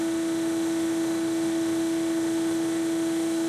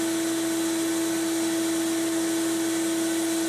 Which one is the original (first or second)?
second